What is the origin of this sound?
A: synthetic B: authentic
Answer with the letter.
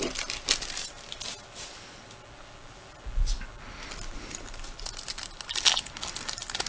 B